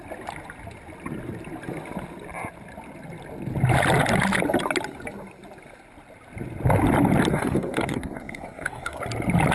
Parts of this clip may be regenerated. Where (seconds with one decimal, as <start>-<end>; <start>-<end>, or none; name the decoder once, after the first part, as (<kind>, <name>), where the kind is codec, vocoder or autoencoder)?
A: 7.3-9.0 (codec, SNAC)